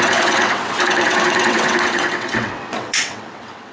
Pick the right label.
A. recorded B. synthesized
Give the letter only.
B